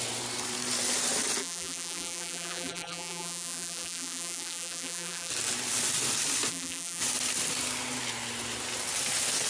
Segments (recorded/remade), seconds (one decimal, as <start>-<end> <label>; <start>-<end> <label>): 0.0-1.4 recorded; 1.4-5.3 remade; 5.3-6.5 recorded; 6.5-7.0 remade; 7.0-9.5 recorded